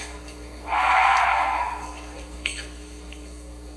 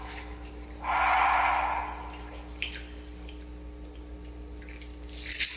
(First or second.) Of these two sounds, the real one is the second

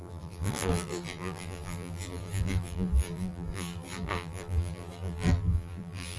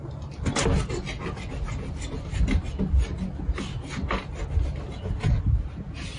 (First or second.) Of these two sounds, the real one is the second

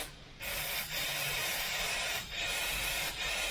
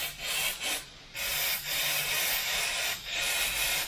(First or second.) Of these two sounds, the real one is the second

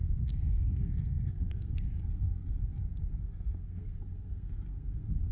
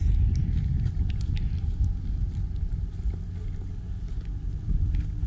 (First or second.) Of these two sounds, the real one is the second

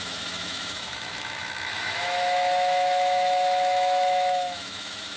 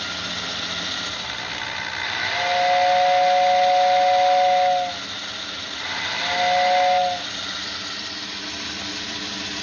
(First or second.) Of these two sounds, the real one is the second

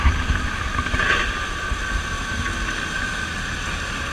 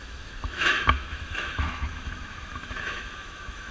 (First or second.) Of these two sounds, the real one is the first